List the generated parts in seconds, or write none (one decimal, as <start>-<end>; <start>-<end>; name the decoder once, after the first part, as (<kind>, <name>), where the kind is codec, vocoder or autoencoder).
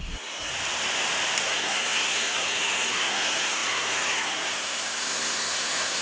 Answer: 0.0-0.5 (codec, SNAC); 1.4-6.0